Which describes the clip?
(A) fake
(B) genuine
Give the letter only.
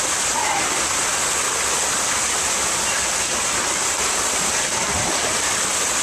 B